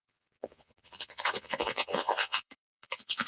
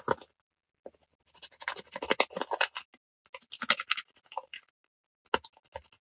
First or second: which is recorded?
second